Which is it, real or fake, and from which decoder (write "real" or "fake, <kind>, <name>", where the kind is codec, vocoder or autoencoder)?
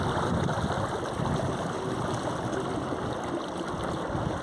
real